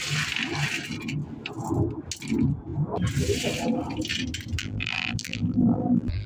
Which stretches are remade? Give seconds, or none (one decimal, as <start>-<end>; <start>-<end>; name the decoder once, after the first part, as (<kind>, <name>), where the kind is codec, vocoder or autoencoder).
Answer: 4.6-6.3 (vocoder, BigVGAN v2)